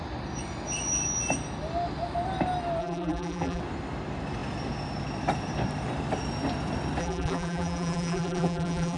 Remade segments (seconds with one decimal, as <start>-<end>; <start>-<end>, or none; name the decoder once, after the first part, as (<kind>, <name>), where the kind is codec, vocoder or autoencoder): 2.8-3.6 (vocoder, BigVGAN v2); 7.0-9.0